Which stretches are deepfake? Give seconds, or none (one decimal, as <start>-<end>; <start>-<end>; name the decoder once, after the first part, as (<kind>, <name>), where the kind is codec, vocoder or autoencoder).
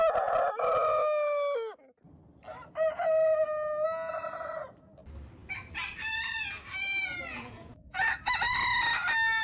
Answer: 7.3-8.1 (vocoder, Vocos)